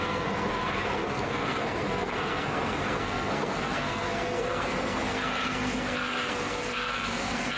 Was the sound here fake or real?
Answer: fake